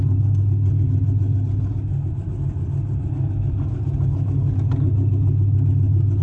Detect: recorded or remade recorded